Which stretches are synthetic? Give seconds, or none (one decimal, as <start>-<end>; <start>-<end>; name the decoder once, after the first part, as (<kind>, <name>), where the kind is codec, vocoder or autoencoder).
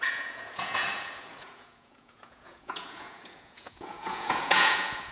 0.0-5.1 (vocoder, Vocos)